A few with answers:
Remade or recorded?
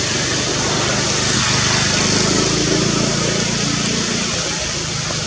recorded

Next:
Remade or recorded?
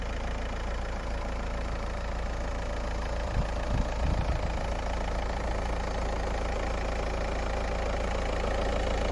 recorded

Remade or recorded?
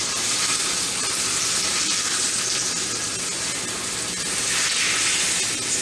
recorded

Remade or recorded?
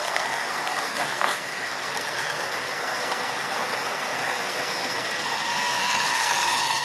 remade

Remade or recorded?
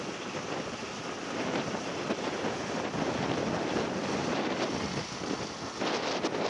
recorded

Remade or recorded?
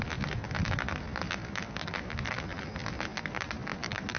recorded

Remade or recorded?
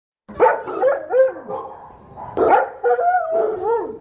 remade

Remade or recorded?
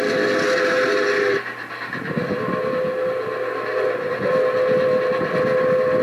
recorded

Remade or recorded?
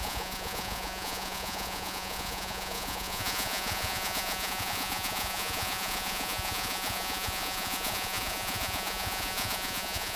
remade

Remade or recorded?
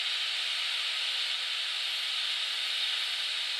recorded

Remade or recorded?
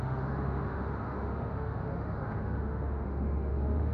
remade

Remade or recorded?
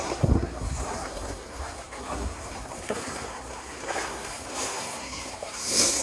remade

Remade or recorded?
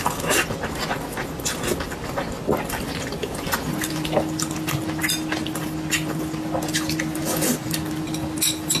recorded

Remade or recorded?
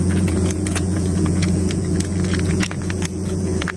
remade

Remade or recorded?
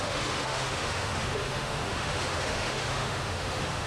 remade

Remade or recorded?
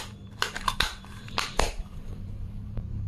remade